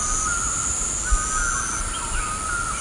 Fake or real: real